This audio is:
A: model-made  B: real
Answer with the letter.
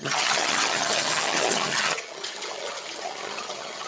A